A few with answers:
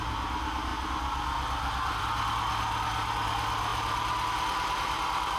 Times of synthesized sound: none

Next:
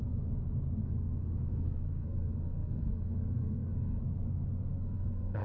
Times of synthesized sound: 0.8-4.0 (codec, SNAC); 4.7-5.4